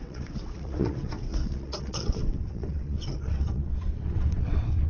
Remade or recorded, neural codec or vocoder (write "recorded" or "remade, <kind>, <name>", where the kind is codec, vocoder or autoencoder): remade, vocoder, WaveNeXt